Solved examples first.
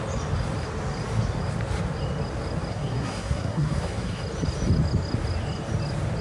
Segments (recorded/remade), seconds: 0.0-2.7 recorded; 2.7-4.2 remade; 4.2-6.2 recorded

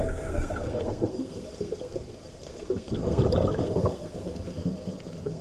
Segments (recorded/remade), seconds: 0.0-3.2 remade; 3.2-3.6 recorded; 3.6-5.4 remade

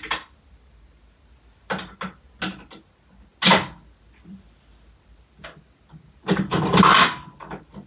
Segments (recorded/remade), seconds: 0.0-7.9 recorded

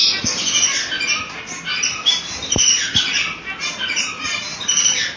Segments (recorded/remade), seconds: 0.0-5.2 recorded

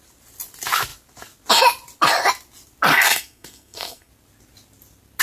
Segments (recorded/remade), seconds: 0.0-2.9 recorded; 2.9-4.1 remade; 4.1-5.2 recorded

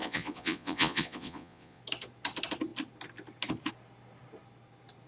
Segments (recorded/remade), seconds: 0.0-1.8 remade; 1.8-5.1 recorded